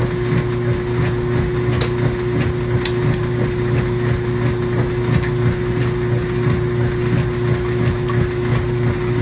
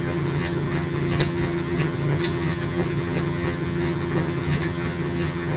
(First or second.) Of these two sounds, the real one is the first